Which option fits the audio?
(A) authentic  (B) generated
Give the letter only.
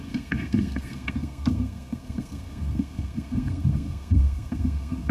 B